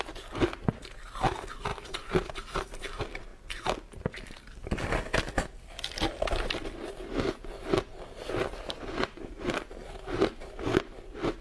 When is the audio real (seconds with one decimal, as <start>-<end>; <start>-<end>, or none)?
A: 0.0-11.4